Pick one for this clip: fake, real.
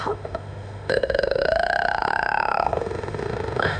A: fake